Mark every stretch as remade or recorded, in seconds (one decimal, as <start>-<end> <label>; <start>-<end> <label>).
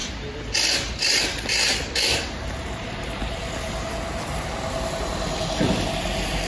0.0-6.5 recorded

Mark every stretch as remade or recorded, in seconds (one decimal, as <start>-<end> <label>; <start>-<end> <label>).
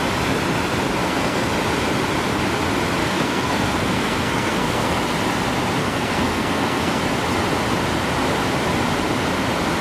0.0-1.0 recorded; 1.0-1.5 remade; 1.5-3.0 recorded; 3.0-5.0 remade; 5.0-5.8 recorded; 5.8-7.0 remade; 7.0-9.8 recorded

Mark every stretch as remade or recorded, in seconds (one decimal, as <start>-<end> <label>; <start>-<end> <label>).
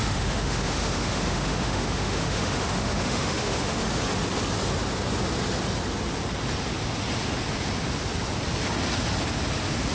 0.0-3.8 remade; 3.8-9.9 recorded